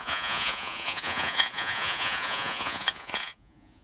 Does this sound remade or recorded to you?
remade